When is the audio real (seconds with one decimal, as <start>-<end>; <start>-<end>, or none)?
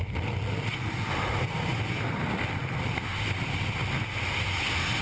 0.0-5.0